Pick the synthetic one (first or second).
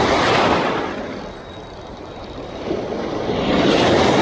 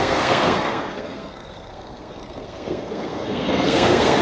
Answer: second